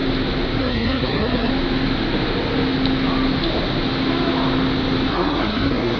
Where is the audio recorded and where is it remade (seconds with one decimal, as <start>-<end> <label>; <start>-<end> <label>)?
0.0-0.6 recorded; 0.6-1.5 remade; 1.5-5.1 recorded; 5.1-6.0 remade